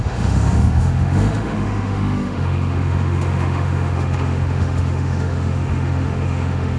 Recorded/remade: remade